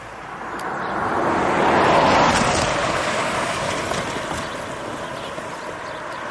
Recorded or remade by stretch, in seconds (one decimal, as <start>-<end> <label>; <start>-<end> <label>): 0.0-2.8 recorded; 2.8-3.7 remade; 3.7-6.3 recorded